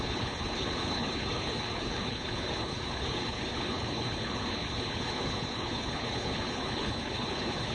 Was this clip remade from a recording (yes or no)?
yes